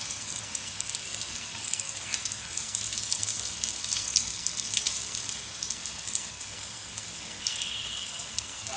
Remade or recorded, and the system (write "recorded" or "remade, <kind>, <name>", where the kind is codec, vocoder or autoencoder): remade, codec, SNAC